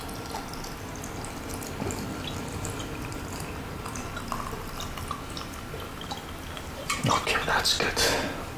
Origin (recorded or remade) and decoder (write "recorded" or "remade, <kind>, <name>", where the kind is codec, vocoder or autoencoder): recorded